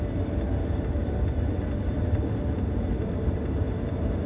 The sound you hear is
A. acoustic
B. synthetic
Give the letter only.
A